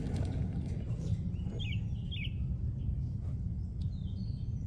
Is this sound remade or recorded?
recorded